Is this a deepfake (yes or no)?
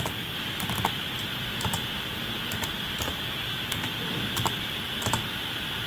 no